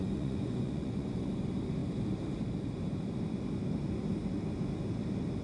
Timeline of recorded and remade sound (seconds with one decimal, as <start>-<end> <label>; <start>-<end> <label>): 0.0-1.3 remade; 1.3-5.4 recorded